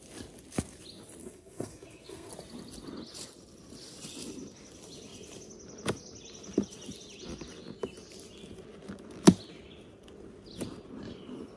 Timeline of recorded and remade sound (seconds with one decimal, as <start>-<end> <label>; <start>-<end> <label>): 0.0-1.2 recorded; 1.2-2.3 remade; 2.3-11.6 recorded